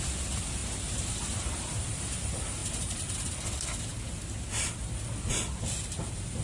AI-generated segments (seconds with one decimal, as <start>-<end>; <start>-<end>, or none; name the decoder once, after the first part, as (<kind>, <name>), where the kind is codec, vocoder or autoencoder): 0.6-2.0 (vocoder, BigVGAN v2); 2.6-3.3